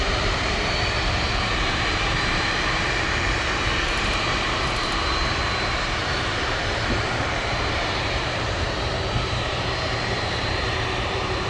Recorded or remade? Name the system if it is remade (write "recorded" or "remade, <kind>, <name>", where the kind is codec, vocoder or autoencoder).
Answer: remade, vocoder, BigVGAN v2